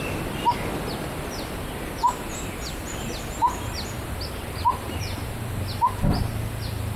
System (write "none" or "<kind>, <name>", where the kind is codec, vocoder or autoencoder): none